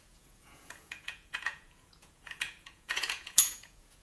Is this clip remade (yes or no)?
yes